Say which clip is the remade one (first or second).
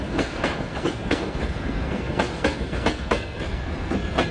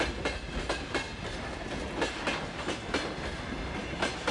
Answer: first